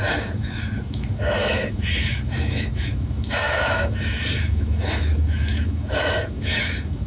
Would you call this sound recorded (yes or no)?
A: no